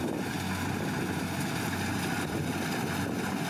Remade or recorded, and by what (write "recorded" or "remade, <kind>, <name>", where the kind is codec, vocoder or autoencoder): recorded